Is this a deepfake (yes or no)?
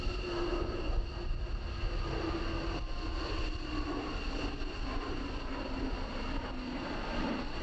no